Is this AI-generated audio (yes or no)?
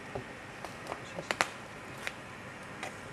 no